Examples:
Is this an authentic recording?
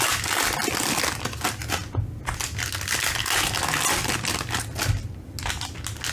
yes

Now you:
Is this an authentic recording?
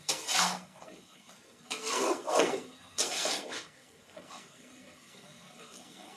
no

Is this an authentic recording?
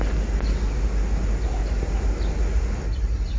yes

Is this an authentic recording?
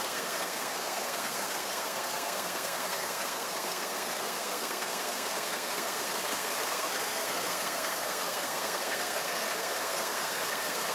no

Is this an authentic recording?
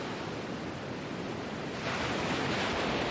yes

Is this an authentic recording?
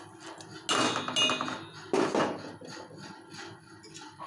yes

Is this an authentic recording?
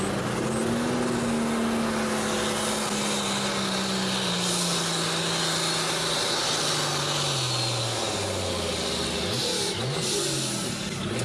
yes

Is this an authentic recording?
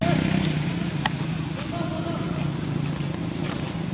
yes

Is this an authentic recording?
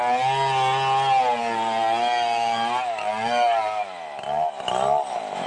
yes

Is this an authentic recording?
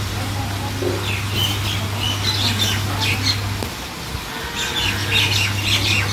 yes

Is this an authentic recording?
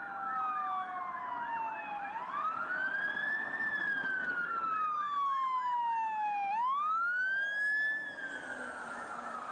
yes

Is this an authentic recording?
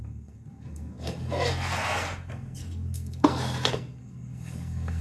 no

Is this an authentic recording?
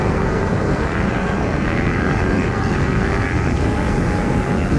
no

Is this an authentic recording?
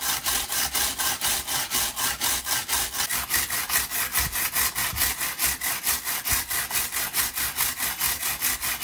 yes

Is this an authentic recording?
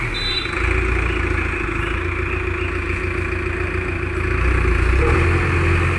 yes